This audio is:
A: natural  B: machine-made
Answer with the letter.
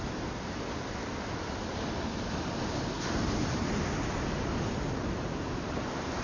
A